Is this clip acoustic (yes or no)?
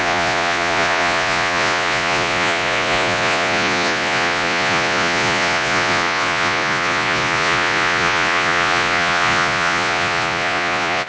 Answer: no